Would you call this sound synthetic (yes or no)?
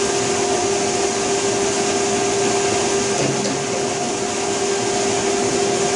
no